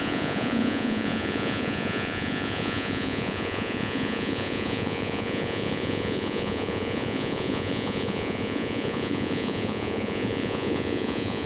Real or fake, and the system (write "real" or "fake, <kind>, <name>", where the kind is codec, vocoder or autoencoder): fake, vocoder, Vocos